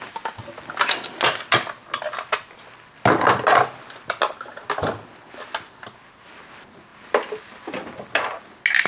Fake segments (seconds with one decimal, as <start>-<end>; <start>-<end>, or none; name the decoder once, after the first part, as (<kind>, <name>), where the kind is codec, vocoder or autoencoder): none